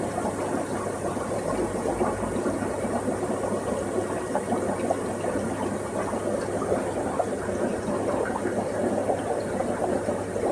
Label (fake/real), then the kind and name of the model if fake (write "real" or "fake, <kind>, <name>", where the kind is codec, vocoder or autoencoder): real